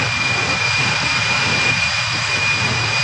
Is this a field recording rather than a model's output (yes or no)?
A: yes